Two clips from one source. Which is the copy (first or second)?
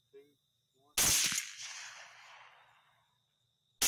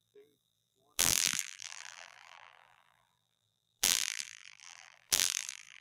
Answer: second